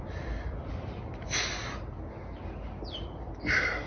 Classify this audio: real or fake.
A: real